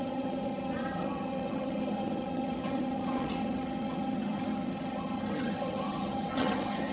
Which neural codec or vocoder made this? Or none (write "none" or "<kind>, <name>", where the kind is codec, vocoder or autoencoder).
vocoder, HiFi-GAN